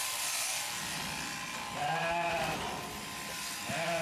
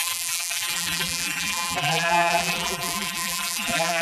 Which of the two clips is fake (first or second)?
second